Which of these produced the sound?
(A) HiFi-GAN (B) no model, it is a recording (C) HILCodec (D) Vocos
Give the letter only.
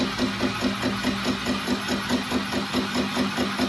B